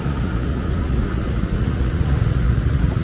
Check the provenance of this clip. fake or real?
fake